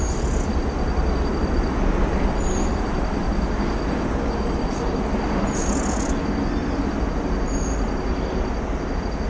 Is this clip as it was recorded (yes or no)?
yes